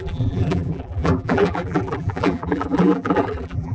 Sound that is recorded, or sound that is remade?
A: remade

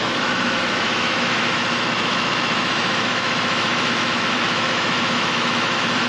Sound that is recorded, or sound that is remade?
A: remade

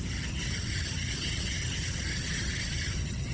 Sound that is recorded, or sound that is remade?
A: recorded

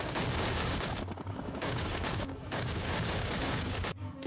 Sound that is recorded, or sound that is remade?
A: remade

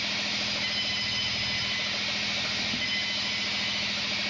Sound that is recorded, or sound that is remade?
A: recorded